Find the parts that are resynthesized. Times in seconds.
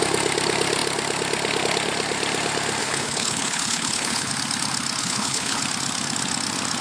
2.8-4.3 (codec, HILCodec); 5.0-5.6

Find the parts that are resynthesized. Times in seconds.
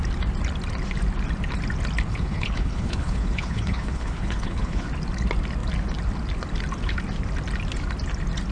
2.1-4.9 (codec, HILCodec)